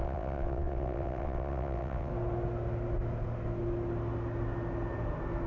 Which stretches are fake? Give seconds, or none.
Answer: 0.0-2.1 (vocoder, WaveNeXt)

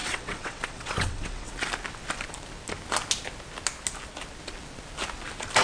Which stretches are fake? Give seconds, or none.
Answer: 0.0-1.5 (vocoder, WaveNeXt)